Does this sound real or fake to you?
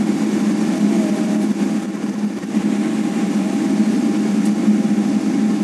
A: real